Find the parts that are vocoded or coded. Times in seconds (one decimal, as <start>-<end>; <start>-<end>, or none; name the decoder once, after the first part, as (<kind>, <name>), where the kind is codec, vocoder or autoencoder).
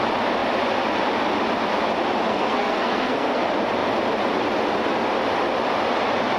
2.3-3.4 (codec, SNAC)